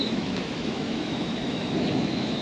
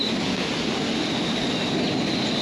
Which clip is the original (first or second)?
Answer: second